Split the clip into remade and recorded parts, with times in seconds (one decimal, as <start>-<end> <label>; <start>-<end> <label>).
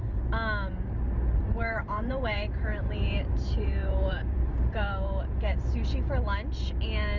0.0-1.5 recorded; 1.5-5.7 remade; 5.7-7.2 recorded